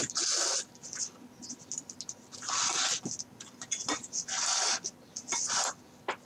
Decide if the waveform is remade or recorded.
recorded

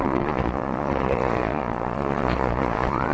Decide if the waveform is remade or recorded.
remade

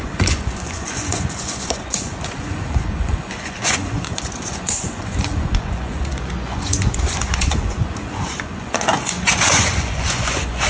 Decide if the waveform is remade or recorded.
remade